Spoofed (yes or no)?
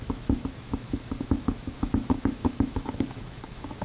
yes